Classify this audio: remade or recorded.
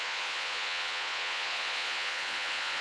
remade